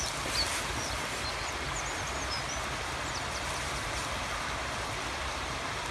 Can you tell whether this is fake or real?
real